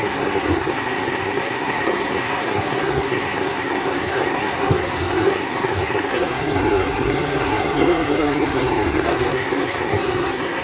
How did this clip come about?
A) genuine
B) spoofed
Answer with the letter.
B